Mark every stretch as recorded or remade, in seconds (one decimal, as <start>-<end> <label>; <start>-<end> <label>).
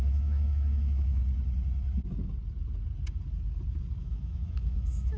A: 0.0-1.2 remade; 1.2-4.0 recorded; 4.0-5.2 remade